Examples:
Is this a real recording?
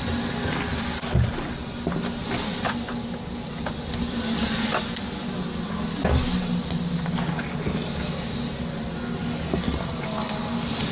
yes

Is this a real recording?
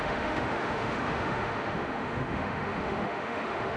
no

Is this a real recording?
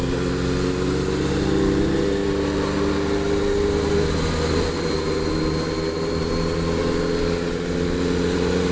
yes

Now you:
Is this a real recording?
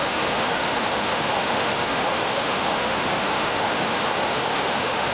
no